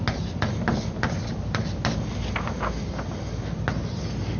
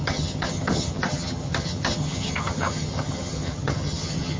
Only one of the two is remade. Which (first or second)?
second